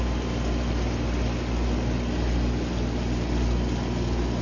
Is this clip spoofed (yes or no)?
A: no